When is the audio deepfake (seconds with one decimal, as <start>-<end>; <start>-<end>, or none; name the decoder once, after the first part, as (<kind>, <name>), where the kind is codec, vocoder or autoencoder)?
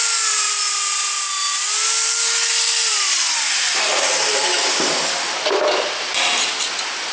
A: none